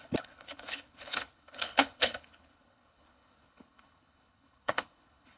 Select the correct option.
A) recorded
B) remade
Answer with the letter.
B